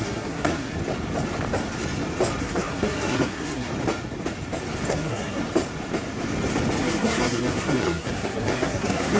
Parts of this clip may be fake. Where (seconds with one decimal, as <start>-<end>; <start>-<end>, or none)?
0.0-0.8; 2.4-3.7; 4.9-5.4; 6.8-9.2